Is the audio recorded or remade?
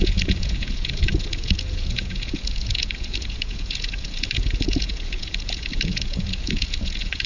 remade